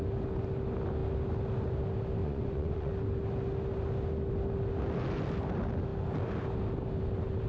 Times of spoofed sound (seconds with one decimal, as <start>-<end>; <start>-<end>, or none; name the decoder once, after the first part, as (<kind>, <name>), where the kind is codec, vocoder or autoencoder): 2.2-2.9 (vocoder, Vocos)